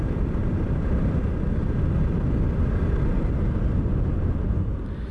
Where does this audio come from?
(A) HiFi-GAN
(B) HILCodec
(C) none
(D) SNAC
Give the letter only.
C